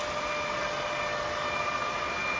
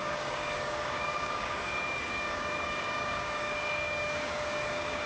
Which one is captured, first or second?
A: first